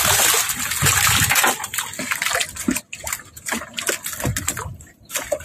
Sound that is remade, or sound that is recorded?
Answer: recorded